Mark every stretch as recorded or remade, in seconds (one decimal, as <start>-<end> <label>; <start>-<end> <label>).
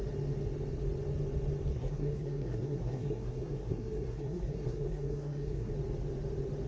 0.0-1.7 recorded; 1.7-5.7 remade; 5.7-6.7 recorded